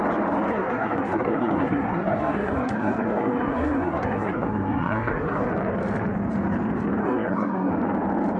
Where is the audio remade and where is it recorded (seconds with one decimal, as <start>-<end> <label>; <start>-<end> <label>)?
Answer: 0.0-0.5 recorded; 0.5-5.5 remade; 5.5-7.0 recorded; 7.0-7.7 remade; 7.7-8.4 recorded